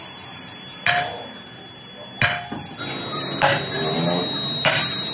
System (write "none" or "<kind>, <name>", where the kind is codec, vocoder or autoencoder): none